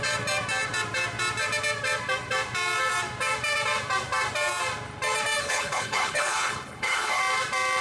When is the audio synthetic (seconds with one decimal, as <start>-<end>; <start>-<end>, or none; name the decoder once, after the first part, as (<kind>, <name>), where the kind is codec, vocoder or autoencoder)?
5.4-7.2 (codec, HILCodec)